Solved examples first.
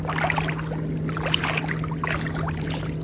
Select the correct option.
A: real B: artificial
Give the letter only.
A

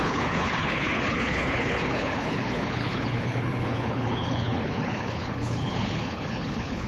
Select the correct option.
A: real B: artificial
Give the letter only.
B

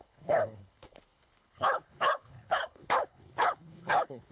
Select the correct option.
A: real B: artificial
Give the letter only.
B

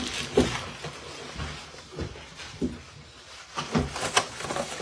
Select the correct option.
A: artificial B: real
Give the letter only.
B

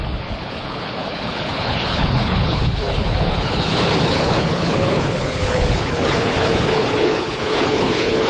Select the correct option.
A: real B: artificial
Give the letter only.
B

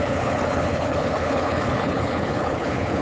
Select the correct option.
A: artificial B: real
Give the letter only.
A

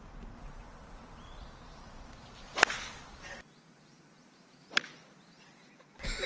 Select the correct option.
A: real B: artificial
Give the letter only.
A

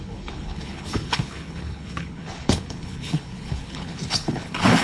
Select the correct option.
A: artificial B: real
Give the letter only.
A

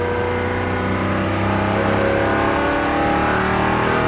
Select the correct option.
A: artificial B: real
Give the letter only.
B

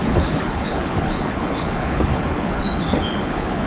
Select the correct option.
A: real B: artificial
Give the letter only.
B